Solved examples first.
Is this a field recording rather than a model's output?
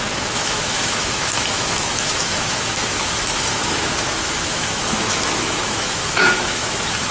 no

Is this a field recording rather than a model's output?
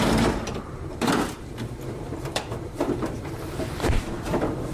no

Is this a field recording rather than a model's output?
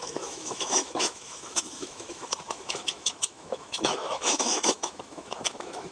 no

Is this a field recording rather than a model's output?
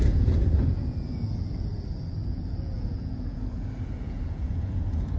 no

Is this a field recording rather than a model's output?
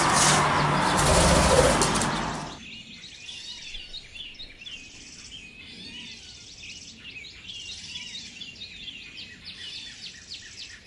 yes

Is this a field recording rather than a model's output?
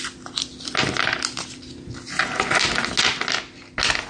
yes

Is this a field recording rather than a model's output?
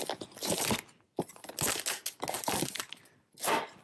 yes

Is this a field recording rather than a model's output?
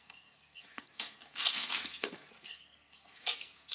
no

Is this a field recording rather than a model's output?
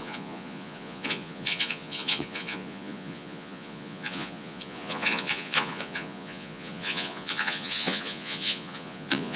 no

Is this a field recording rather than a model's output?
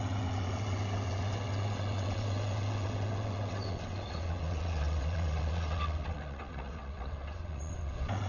no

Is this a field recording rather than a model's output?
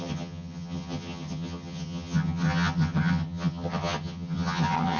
no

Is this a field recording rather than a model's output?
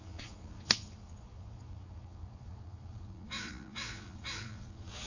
no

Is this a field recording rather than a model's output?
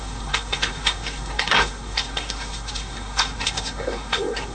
no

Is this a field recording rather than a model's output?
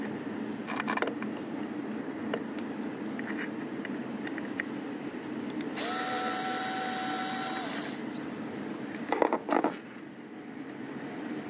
yes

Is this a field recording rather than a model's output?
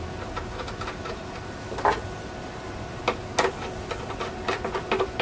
yes